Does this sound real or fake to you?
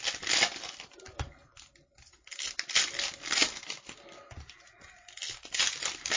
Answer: real